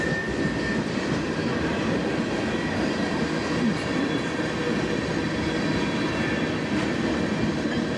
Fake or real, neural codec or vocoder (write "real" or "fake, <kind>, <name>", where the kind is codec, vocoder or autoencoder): real